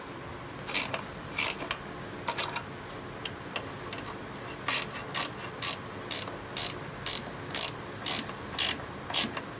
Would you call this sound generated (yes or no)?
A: no